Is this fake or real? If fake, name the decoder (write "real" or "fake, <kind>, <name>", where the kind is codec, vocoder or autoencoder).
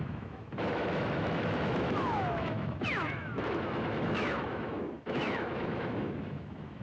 fake, autoencoder, DAC-VAE